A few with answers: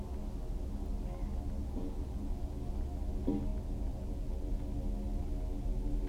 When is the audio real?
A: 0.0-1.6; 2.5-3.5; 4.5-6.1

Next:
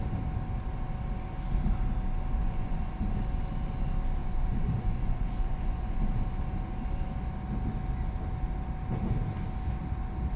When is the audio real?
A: 0.0-2.4; 2.9-4.2; 6.0-10.4

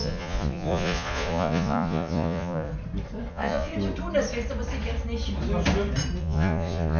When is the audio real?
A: 2.7-3.3; 3.7-6.2

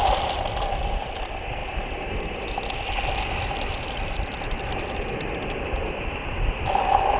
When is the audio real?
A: 0.0-7.2

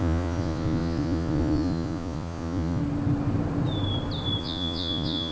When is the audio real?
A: 2.8-4.4

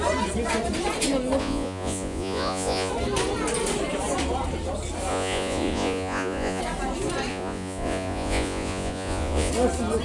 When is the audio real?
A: 0.0-1.4; 2.9-5.1; 6.6-7.3; 9.5-10.0

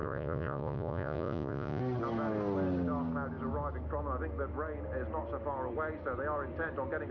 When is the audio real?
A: 1.8-7.1